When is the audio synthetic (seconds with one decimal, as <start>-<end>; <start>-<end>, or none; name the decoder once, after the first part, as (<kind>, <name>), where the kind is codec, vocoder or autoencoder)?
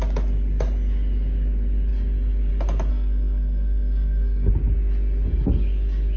2.9-4.5 (codec, SNAC)